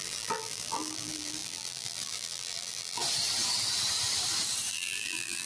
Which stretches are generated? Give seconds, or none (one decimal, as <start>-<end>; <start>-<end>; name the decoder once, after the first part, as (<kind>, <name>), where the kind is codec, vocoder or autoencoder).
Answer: 0.0-3.0 (vocoder, BigVGAN v2); 4.7-5.5